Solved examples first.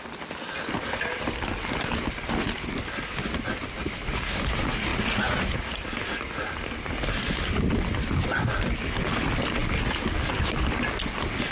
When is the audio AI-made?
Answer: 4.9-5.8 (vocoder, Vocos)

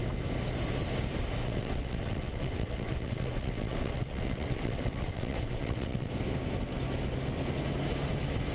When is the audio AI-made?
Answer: 1.4-6.1 (vocoder, WaveNeXt)

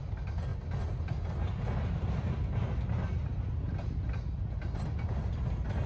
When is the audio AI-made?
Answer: none

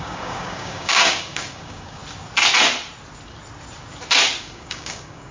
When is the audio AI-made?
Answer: 0.0-2.0 (codec, DAC); 4.4-5.3

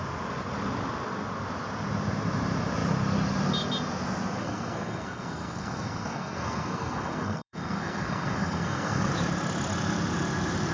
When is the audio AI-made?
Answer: 4.4-9.1 (codec, SNAC)

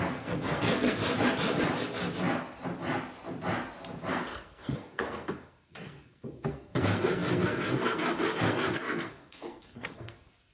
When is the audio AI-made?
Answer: 0.0-1.0 (codec, SNAC); 4.1-10.5

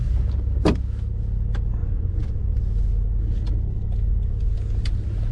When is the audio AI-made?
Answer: 1.8-2.6 (vocoder, Vocos)

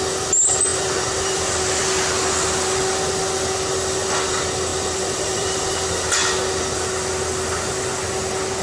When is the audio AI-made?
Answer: 0.7-1.3 (vocoder, BigVGAN v2); 4.7-5.6